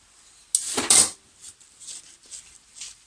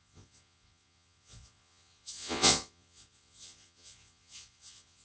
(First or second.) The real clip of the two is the first